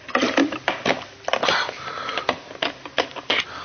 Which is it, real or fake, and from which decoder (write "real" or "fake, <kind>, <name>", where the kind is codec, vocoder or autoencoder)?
real